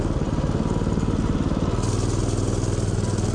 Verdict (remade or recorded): recorded